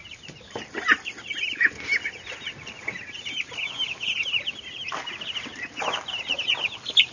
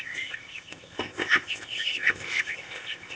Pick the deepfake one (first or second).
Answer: second